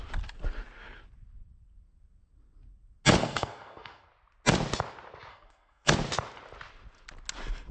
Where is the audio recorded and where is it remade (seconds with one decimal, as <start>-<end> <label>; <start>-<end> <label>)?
0.0-3.2 recorded; 3.2-4.1 remade; 4.1-5.3 recorded; 5.3-5.9 remade; 5.9-7.7 recorded